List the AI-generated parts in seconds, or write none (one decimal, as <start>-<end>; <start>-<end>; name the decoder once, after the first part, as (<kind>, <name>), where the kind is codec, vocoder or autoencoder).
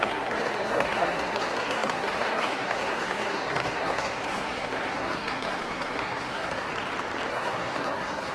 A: 0.0-6.7 (codec, SNAC); 7.3-8.3